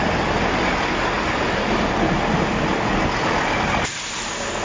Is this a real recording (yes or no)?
yes